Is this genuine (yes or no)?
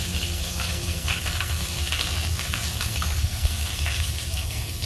no